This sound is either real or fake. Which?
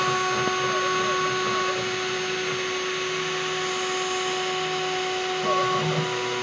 real